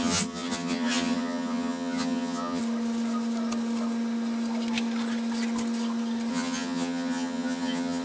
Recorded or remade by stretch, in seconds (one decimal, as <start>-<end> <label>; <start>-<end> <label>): 0.0-2.6 remade; 2.6-6.3 recorded; 6.3-8.0 remade